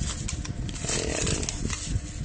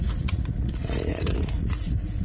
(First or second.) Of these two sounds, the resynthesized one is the second